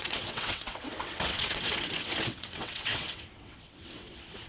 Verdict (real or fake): fake